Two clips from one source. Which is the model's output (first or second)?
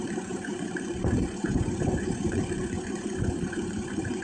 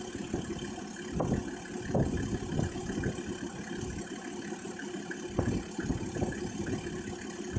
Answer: first